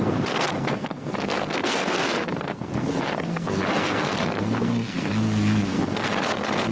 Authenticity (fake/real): fake